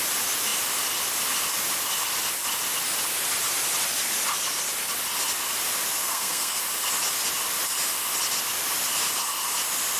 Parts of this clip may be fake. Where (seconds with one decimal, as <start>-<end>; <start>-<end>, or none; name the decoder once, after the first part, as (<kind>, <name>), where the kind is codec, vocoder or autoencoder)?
6.0-6.6 (codec, SNAC)